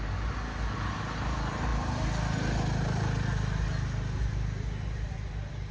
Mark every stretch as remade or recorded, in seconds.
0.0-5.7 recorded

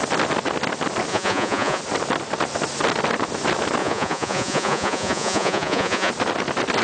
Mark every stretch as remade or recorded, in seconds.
0.0-1.1 recorded; 1.1-1.8 remade; 1.8-3.8 recorded; 3.8-6.1 remade; 6.1-6.8 recorded

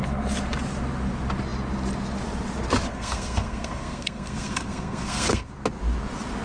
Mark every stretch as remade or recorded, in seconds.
0.0-2.9 recorded; 2.9-5.5 remade; 5.5-6.4 recorded

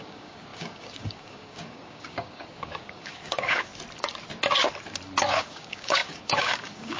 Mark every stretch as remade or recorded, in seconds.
0.0-3.7 remade; 3.7-5.3 recorded; 5.3-7.0 remade